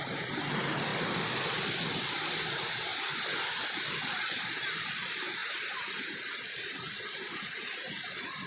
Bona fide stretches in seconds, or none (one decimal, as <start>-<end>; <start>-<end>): 0.9-2.5; 2.9-4.2